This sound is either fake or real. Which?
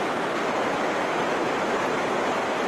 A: real